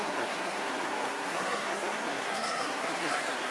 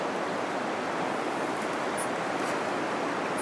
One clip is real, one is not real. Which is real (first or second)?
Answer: second